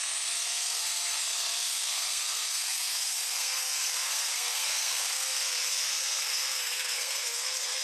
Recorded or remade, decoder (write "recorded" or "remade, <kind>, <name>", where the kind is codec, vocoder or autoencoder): remade, codec, SNAC